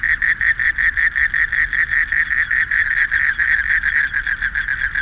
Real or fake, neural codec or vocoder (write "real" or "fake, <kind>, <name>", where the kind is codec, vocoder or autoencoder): real